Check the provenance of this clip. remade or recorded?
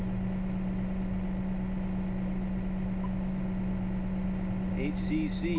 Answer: recorded